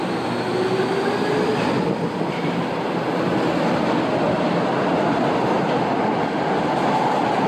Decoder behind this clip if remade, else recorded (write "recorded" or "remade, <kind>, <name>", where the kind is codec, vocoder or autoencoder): recorded